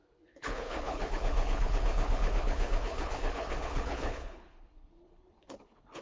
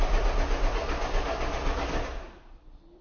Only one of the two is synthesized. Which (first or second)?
first